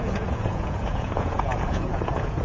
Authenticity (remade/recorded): remade